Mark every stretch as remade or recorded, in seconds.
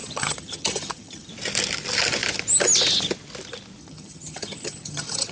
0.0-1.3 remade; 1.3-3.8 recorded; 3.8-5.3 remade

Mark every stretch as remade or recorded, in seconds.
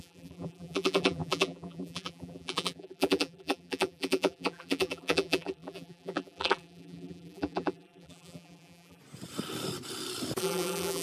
0.0-9.0 remade; 9.0-10.4 recorded; 10.4-11.0 remade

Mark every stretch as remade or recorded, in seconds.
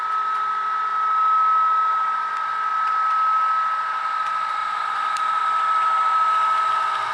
0.0-4.6 recorded; 4.6-5.4 remade; 5.4-7.1 recorded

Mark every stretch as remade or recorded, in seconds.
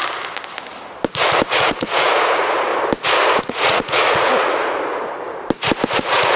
0.0-1.5 recorded; 1.5-2.7 remade; 2.7-3.4 recorded; 3.4-4.9 remade; 4.9-5.9 recorded; 5.9-6.4 remade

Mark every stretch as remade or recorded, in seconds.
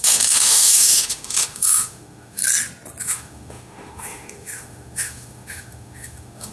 0.0-2.4 remade; 2.4-3.0 recorded; 3.0-6.5 remade